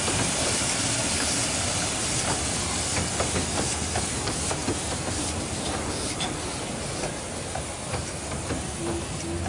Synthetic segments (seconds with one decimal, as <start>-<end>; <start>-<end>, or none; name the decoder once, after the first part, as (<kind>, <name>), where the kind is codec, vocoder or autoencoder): 2.9-3.7 (vocoder, BigVGAN v2); 4.6-5.9